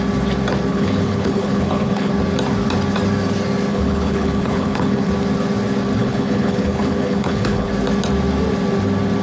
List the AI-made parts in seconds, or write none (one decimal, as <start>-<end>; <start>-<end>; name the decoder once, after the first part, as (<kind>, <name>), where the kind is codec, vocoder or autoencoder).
0.7-2.1 (codec, HILCodec); 3.7-5.1; 6.0-7.7